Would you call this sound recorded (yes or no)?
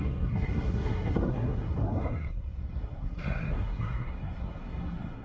no